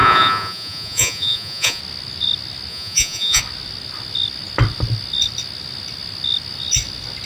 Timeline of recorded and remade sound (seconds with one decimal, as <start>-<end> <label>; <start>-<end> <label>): 0.0-1.8 remade; 1.8-2.7 recorded; 2.7-3.4 remade; 3.4-7.3 recorded